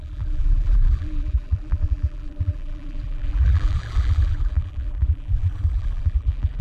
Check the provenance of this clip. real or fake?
fake